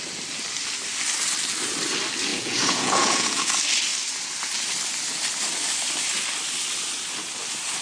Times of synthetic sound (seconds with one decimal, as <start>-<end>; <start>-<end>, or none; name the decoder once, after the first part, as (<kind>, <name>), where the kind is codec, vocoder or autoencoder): 2.3-3.5 (vocoder, Vocos)